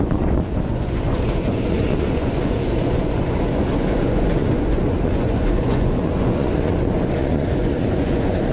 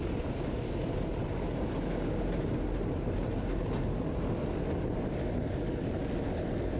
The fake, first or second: first